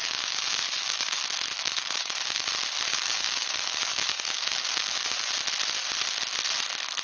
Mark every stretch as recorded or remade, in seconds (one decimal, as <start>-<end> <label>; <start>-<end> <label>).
0.0-1.2 remade; 1.2-1.6 recorded; 1.6-2.5 remade; 2.5-2.9 recorded; 2.9-5.3 remade; 5.3-7.0 recorded